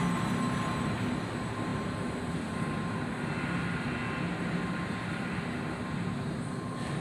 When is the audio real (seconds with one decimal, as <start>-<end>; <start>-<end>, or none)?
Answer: 0.0-7.0